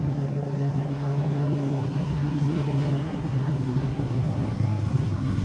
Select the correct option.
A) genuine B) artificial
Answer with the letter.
B